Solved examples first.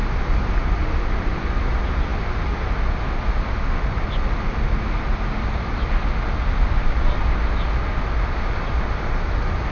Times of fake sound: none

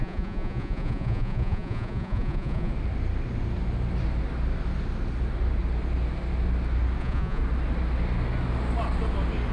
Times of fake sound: 0.0-2.7 (vocoder, Vocos); 7.0-7.4

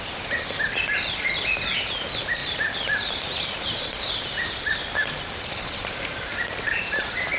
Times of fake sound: 2.4-6.8 (vocoder, BigVGAN v2)

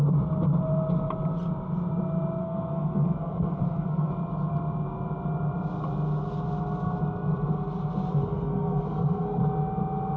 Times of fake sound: 2.4-4.1 (codec, SNAC); 8.1-9.4